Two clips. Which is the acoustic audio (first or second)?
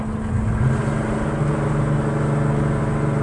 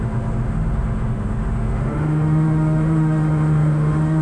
first